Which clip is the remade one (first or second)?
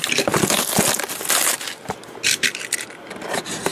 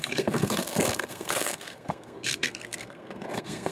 second